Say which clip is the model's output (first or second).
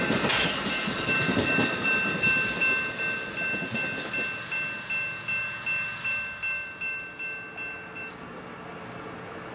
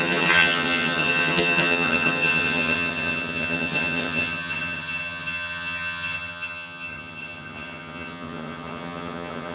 second